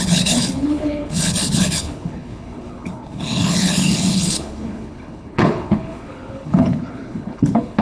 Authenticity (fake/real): fake